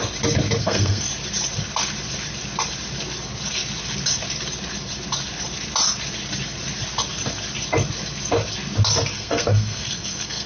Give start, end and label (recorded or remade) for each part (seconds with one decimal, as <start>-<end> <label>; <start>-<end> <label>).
0.0-0.6 recorded; 0.6-1.1 remade; 1.1-9.1 recorded; 9.1-10.5 remade